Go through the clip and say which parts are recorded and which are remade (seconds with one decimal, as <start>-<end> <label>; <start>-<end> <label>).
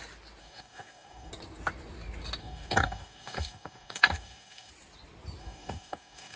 0.0-0.4 recorded; 0.4-1.3 remade; 1.3-2.4 recorded; 2.4-4.7 remade; 4.7-5.4 recorded; 5.4-6.4 remade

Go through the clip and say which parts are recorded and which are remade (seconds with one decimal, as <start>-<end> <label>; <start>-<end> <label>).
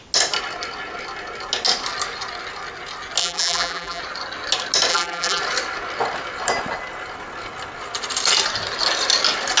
0.0-3.2 recorded; 3.2-4.0 remade; 4.0-4.9 recorded; 4.9-5.4 remade; 5.4-9.6 recorded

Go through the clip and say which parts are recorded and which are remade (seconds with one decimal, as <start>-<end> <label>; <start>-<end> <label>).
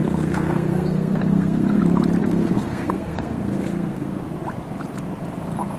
0.0-1.8 remade; 1.8-2.2 recorded; 2.2-4.2 remade; 4.2-5.8 recorded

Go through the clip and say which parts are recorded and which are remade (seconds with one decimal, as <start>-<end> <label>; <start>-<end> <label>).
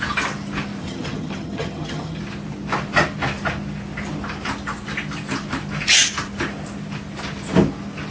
0.0-0.8 recorded; 0.8-2.2 remade; 2.2-8.1 recorded